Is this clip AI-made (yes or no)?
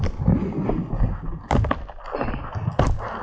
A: no